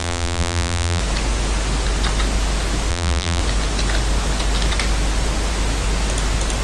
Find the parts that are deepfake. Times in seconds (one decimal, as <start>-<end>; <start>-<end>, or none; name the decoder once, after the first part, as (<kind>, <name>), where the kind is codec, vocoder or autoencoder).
0.0-1.0 (vocoder, BigVGAN v2); 2.9-3.4